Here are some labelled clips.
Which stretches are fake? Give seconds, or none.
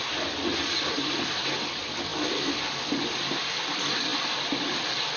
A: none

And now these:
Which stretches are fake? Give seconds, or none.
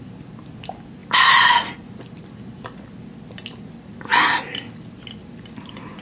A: none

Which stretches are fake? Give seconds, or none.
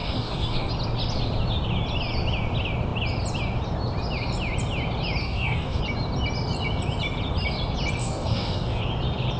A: 0.0-0.7 (codec, DAC); 5.2-5.8; 8.0-8.8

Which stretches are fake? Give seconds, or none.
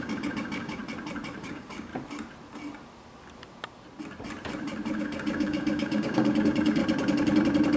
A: 0.0-0.8 (codec, DAC); 1.4-1.9; 5.0-6.8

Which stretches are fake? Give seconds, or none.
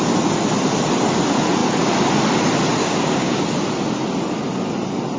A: 2.8-3.4 (codec, DAC)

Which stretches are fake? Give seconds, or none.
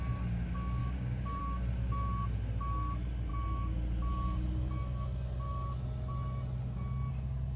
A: 0.8-1.4 (codec, DAC)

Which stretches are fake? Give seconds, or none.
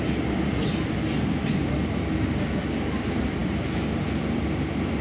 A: none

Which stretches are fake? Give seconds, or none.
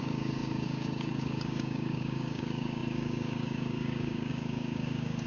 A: 0.0-5.3 (codec, DAC)